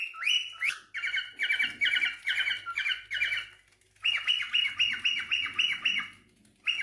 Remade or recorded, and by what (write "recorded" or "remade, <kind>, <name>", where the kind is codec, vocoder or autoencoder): recorded